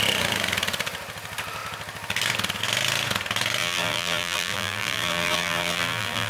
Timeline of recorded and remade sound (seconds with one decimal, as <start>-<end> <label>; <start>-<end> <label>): 0.0-3.6 recorded; 3.6-6.3 remade